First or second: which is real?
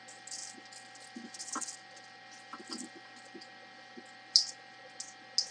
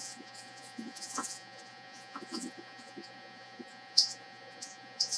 first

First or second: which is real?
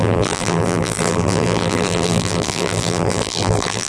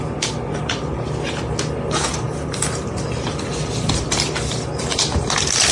second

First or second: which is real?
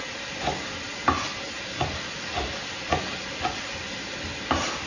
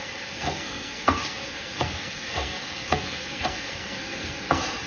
first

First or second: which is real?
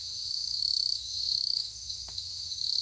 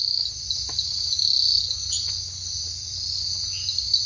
second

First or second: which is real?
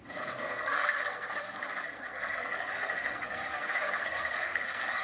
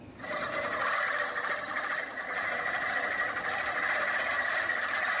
second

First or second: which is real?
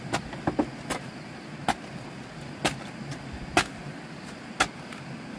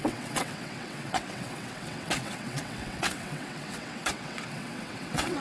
first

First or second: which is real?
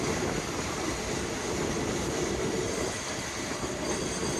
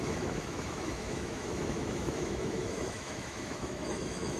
first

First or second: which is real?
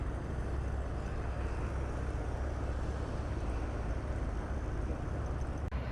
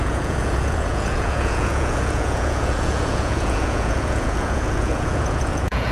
first